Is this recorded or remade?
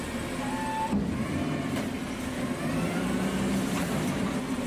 recorded